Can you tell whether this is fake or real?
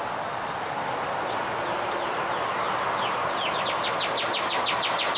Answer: real